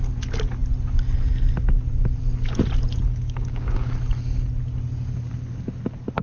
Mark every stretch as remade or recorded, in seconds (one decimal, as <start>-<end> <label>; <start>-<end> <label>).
0.0-3.1 recorded; 3.1-3.9 remade; 3.9-6.2 recorded